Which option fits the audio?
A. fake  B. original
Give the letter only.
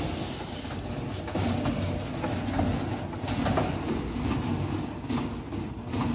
B